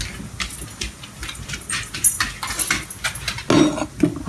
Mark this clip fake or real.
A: real